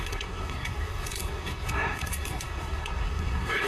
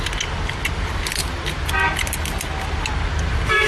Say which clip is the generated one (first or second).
first